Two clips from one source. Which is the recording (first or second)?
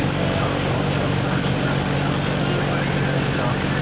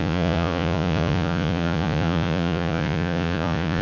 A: first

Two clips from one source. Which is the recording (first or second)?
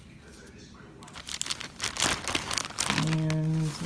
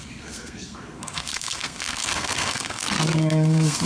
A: first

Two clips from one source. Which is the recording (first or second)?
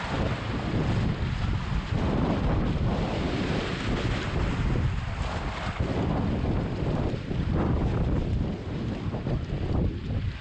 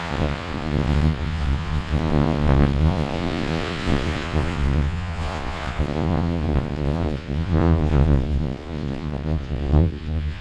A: first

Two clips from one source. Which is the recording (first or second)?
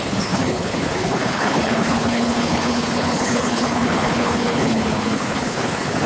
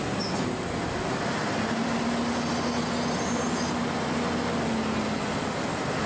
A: second